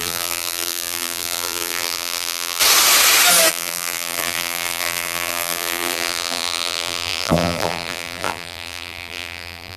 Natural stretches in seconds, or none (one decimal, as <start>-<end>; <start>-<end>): 2.6-3.5